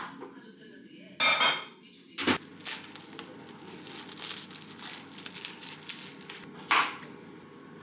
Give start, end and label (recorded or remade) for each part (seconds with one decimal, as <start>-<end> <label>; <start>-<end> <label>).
0.0-7.8 recorded